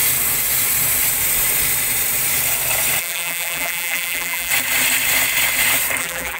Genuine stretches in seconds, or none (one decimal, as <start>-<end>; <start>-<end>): 0.0-3.0; 4.5-6.0